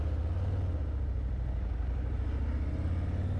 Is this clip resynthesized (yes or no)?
no